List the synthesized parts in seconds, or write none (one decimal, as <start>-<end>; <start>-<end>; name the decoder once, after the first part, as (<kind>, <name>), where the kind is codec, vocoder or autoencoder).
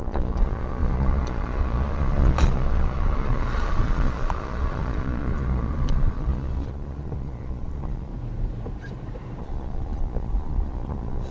0.0-8.1 (vocoder, Vocos); 9.4-11.3